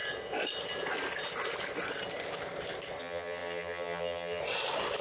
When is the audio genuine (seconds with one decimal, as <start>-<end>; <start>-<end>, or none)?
0.0-3.0; 4.4-5.0